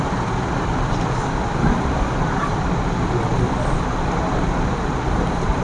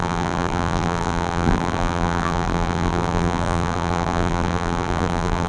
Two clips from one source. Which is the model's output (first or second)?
second